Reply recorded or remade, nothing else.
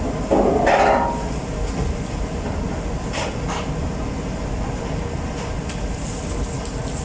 recorded